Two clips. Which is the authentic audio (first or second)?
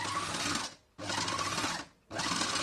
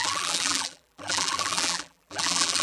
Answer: first